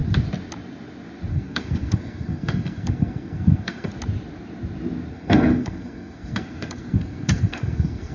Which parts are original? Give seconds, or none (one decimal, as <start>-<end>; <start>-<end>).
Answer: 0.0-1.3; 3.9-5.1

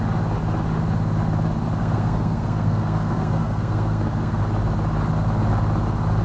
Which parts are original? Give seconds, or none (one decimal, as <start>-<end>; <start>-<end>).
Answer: 0.0-1.8; 4.4-6.2

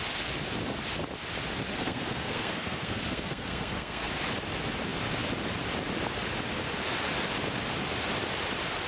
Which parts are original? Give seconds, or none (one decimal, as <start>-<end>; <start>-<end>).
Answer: 0.0-1.7; 4.1-8.9

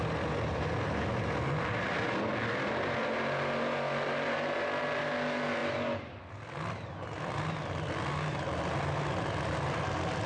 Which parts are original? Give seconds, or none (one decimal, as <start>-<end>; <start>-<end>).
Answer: 0.0-10.3